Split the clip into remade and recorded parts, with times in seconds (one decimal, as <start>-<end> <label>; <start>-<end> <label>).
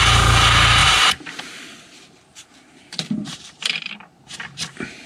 0.0-0.8 recorded; 0.8-3.9 remade; 3.9-5.1 recorded